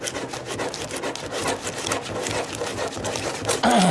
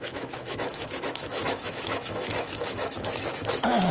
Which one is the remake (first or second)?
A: second